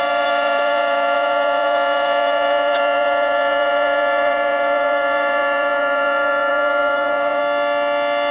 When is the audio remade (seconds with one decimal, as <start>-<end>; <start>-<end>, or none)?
0.0-7.4